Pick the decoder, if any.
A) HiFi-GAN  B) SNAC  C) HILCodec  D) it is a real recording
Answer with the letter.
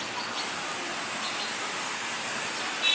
D